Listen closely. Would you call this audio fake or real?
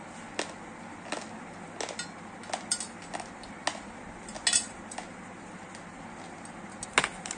real